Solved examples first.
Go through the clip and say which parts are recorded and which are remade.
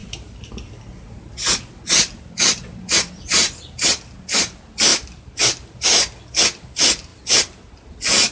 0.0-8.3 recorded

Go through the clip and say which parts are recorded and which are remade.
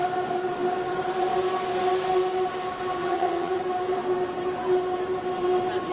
0.0-3.0 recorded; 3.0-3.6 remade; 3.6-5.9 recorded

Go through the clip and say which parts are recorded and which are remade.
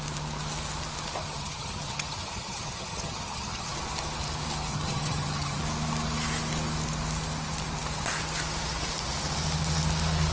0.0-1.2 recorded; 1.2-3.7 remade; 3.7-4.7 recorded; 4.7-5.6 remade; 5.6-10.3 recorded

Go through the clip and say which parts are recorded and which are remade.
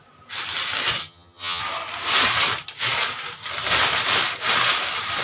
0.0-1.0 recorded; 1.0-1.6 remade; 1.6-5.2 recorded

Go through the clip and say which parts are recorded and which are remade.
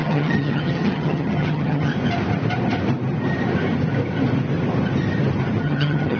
0.0-1.9 remade; 1.9-5.6 recorded; 5.6-6.2 remade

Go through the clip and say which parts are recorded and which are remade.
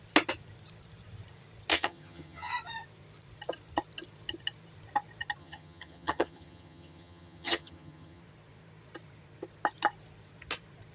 0.0-1.7 recorded; 1.7-2.5 remade; 2.5-5.4 recorded; 5.4-8.2 remade; 8.2-10.9 recorded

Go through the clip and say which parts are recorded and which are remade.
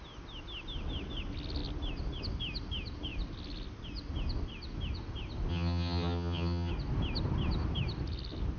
0.0-5.5 recorded; 5.5-6.7 remade; 6.7-8.6 recorded